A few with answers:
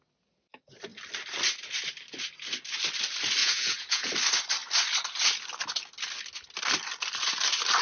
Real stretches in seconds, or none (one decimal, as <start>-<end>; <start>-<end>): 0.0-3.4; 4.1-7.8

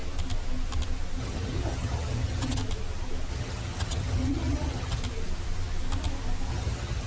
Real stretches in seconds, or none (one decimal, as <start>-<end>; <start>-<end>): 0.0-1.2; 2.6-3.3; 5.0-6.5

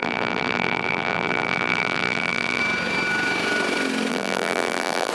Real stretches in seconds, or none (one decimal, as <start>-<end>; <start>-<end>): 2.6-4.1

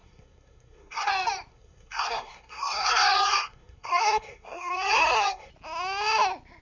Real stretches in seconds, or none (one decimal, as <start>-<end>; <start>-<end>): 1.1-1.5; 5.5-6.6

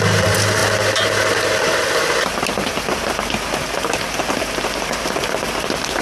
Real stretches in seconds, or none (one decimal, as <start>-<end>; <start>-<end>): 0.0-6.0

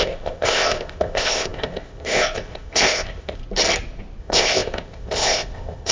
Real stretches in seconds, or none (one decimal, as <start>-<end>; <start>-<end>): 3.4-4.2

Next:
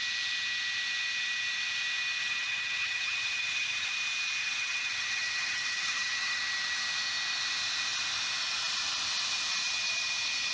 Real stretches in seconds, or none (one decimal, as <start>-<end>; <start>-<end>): 0.0-2.2; 3.9-4.4; 6.4-10.5